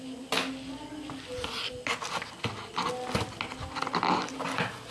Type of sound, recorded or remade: recorded